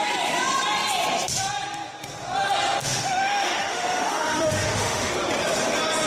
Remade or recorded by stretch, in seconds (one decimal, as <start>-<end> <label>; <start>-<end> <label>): 0.0-2.8 recorded; 2.8-5.1 remade; 5.1-6.1 recorded